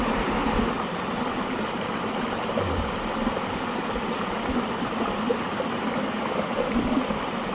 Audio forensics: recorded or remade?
recorded